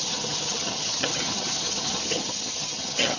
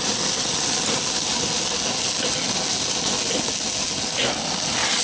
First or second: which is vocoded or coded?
first